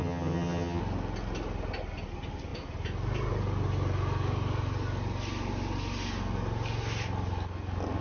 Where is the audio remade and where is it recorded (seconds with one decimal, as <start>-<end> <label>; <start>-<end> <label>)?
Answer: 0.0-0.8 remade; 0.8-8.0 recorded